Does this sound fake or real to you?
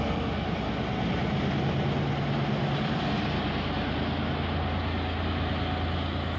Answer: real